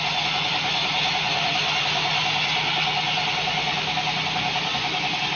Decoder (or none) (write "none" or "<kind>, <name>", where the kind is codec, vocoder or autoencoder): none